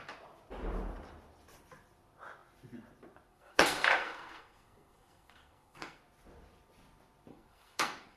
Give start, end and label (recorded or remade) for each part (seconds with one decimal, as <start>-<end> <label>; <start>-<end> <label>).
0.0-3.3 recorded; 3.3-6.0 remade; 6.0-7.3 recorded; 7.3-8.2 remade